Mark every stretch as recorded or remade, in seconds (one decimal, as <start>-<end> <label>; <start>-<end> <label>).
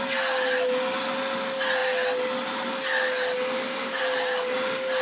0.0-5.0 recorded